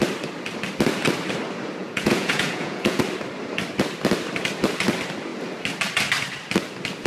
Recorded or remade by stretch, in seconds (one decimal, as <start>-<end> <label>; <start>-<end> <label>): 0.0-1.8 recorded; 1.8-3.0 remade; 3.0-7.1 recorded